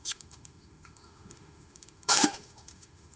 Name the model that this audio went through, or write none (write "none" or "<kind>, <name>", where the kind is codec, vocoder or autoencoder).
autoencoder, DAC-VAE